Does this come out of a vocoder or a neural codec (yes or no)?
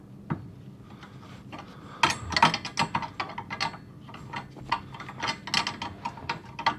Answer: no